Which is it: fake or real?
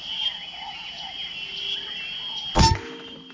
real